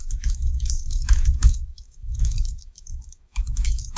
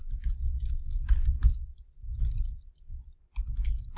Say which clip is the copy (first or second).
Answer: first